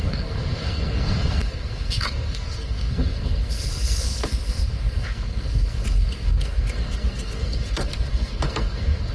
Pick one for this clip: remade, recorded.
remade